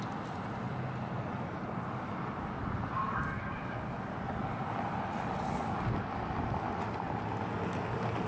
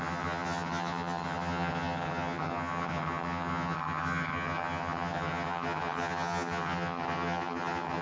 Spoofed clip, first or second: second